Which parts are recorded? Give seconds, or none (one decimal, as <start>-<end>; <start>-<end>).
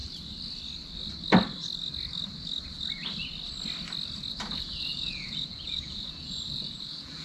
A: 0.0-4.3